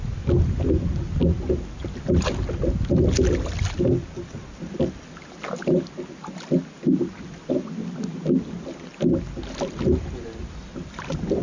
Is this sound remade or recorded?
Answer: recorded